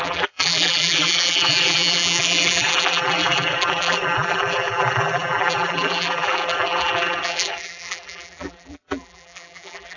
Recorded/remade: remade